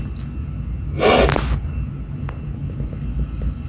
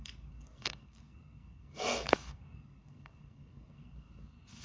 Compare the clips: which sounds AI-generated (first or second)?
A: second